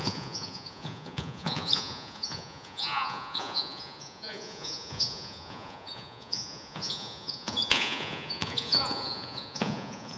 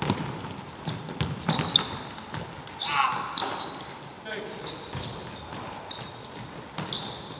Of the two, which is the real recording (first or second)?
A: second